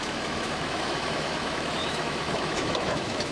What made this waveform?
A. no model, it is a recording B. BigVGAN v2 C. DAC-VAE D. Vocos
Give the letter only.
C